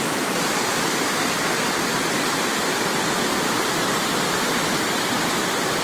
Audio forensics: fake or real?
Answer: real